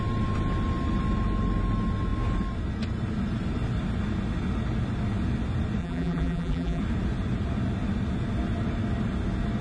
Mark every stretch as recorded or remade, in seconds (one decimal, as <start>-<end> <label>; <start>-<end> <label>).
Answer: 0.0-5.8 recorded; 5.8-6.8 remade; 6.8-9.6 recorded